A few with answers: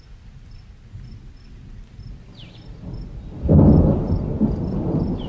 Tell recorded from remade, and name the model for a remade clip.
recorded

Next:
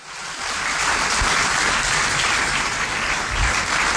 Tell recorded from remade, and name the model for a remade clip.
recorded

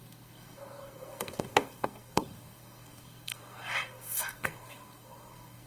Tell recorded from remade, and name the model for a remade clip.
remade, codec, SNAC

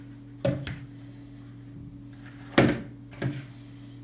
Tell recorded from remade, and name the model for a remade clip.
recorded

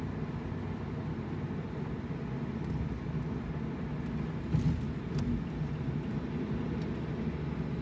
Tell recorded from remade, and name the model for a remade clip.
recorded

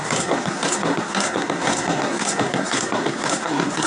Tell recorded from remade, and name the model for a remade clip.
remade, codec, SNAC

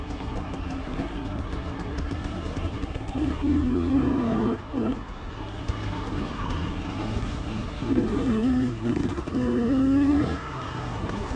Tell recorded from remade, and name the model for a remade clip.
remade, codec, SNAC